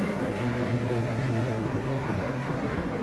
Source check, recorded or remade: remade